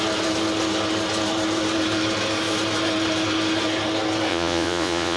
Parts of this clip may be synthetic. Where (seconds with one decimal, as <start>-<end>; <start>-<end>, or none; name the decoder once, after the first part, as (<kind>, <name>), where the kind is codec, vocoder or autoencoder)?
4.3-5.2 (vocoder, Vocos)